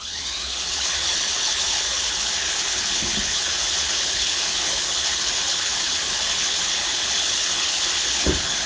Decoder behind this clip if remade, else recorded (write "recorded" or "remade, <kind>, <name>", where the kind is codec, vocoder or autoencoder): remade, codec, HILCodec